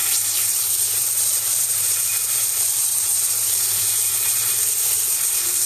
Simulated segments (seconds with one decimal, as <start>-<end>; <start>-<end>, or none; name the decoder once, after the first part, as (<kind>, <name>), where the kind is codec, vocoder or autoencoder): 0.0-5.7 (vocoder, BigVGAN v2)